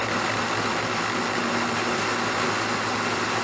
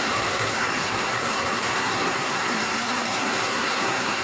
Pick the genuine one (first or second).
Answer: first